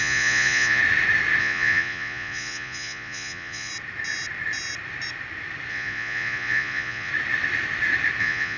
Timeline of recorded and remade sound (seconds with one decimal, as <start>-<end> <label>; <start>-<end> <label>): 0.0-0.8 remade; 0.8-1.4 recorded; 1.4-3.7 remade; 3.7-5.7 recorded; 5.7-7.1 remade; 7.1-8.2 recorded; 8.2-8.6 remade